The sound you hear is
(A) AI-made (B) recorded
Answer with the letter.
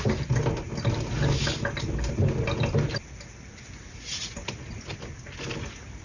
B